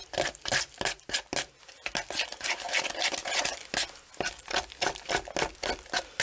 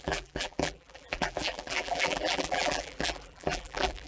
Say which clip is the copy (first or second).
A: second